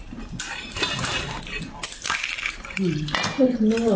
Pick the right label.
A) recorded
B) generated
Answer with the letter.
A